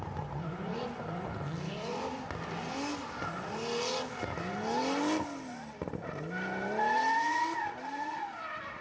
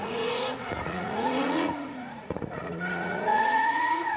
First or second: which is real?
first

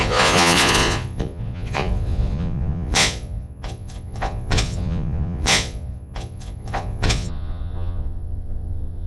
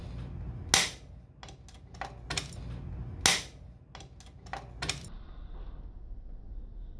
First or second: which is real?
second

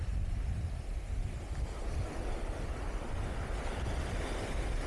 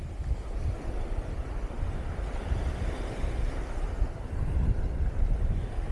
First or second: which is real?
first